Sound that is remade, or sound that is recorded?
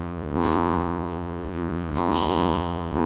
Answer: remade